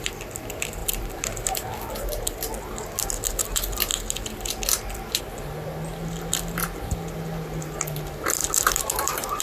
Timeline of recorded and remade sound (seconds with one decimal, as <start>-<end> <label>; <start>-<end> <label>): 0.0-0.8 recorded; 0.8-1.9 remade; 1.9-8.4 recorded; 8.4-9.4 remade